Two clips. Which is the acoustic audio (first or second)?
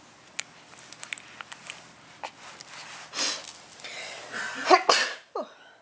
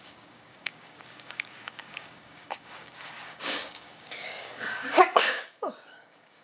first